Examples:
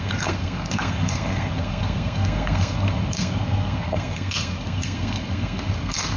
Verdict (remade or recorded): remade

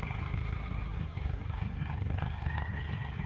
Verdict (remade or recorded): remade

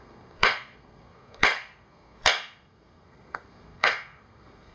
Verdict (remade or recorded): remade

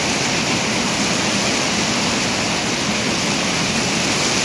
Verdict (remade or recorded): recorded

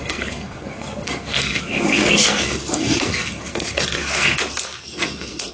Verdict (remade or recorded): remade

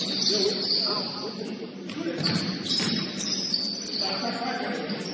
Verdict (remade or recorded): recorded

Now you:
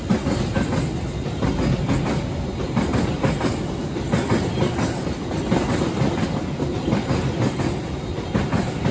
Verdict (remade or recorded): recorded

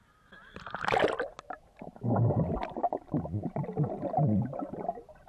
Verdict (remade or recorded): recorded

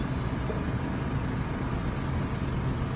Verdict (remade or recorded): recorded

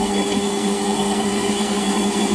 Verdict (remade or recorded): remade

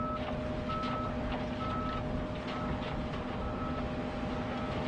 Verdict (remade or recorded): recorded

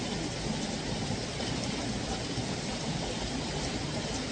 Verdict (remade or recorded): recorded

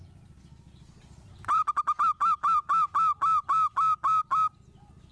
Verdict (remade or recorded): recorded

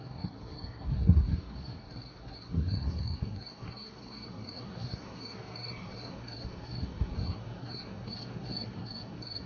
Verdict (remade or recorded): remade